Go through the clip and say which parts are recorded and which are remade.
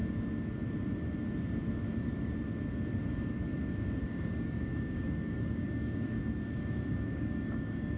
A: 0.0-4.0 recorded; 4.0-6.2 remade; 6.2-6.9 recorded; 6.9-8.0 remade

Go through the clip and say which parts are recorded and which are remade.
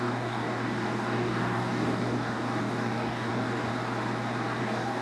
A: 0.0-3.7 remade; 3.7-4.6 recorded; 4.6-5.0 remade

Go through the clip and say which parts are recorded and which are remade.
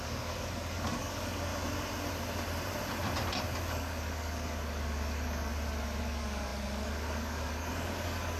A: 0.0-1.5 remade; 1.5-3.6 recorded; 3.6-5.5 remade; 5.5-6.0 recorded; 6.0-8.4 remade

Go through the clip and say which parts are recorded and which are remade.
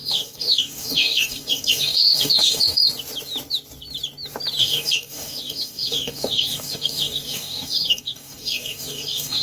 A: 0.0-2.8 remade; 2.8-4.6 recorded; 4.6-9.4 remade